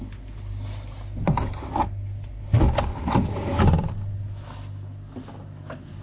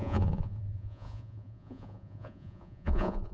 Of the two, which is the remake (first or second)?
second